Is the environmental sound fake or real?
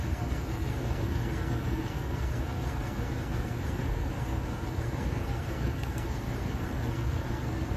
fake